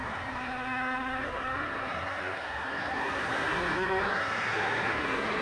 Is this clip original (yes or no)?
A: no